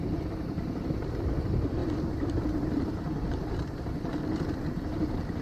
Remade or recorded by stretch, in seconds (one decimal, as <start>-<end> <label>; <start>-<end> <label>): 0.0-5.4 remade